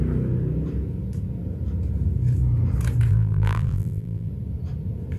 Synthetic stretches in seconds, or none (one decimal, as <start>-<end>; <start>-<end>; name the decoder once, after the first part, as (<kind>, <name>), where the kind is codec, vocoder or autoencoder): 3.1-4.3 (vocoder, BigVGAN v2)